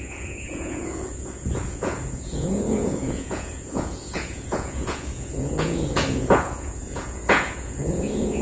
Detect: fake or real fake